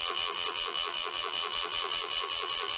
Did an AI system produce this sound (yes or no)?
yes